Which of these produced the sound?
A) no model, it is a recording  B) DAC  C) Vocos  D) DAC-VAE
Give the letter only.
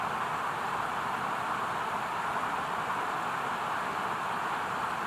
A